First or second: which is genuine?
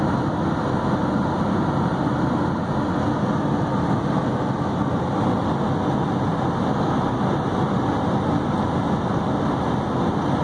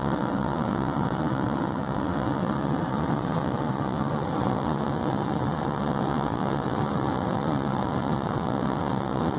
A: first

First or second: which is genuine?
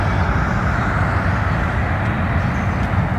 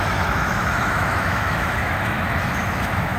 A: first